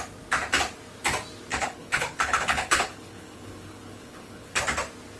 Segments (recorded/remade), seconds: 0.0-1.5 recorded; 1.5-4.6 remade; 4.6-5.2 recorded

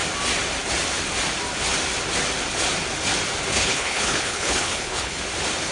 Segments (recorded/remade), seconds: 0.0-3.5 recorded; 3.5-5.2 remade; 5.2-5.7 recorded

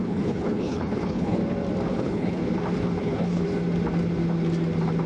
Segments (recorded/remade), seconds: 0.0-1.4 remade; 1.4-1.9 recorded; 1.9-2.4 remade; 2.4-3.0 recorded; 3.0-3.5 remade; 3.5-5.1 recorded

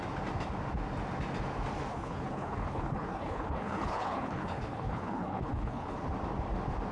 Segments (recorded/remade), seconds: 0.0-1.9 recorded; 1.9-6.0 remade; 6.0-6.9 recorded

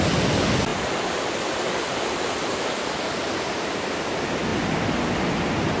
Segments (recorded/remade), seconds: 0.0-5.8 recorded

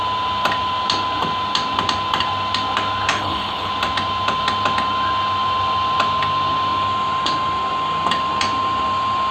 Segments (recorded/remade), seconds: 0.0-3.1 recorded; 3.1-3.7 remade; 3.7-9.3 recorded

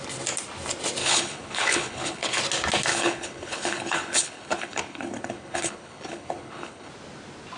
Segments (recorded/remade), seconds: 0.0-1.0 recorded; 1.0-2.4 remade; 2.4-2.9 recorded; 2.9-6.9 remade; 6.9-7.6 recorded